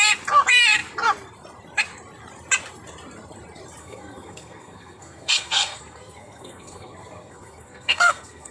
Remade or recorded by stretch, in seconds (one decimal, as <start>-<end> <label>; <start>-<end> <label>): 0.0-3.8 recorded; 3.8-8.5 remade